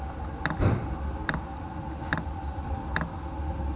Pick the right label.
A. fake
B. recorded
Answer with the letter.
B